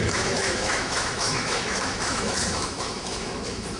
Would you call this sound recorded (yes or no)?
no